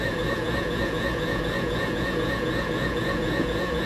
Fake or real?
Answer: fake